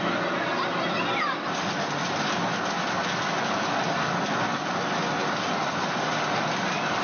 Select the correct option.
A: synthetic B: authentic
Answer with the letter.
B